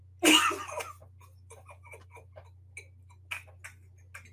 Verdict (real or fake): real